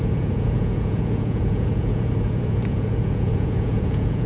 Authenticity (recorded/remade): remade